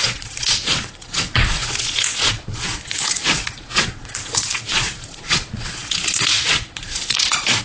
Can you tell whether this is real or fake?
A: fake